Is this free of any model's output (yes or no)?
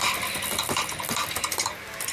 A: yes